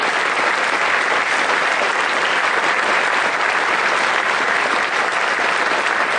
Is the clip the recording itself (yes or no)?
yes